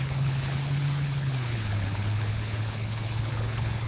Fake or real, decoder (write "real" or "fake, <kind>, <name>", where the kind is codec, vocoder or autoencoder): fake, codec, HILCodec